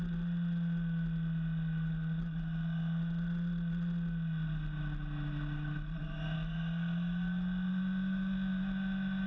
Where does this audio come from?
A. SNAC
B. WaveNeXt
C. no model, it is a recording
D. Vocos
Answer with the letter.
C